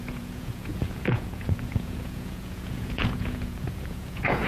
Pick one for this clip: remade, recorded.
remade